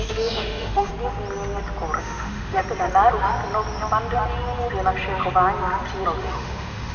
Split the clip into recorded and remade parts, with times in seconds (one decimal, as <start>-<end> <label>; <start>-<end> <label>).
0.0-0.9 remade; 0.9-2.0 recorded; 2.0-2.6 remade; 2.6-6.2 recorded; 6.2-6.9 remade